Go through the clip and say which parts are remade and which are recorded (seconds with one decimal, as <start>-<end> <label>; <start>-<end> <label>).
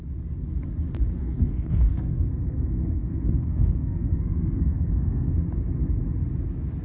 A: 0.0-1.2 recorded; 1.2-5.3 remade; 5.3-6.8 recorded